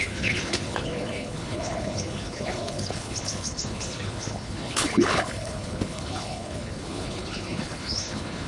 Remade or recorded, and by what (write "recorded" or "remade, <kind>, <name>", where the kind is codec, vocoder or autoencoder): remade, codec, HILCodec